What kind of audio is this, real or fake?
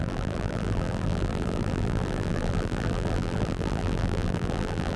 fake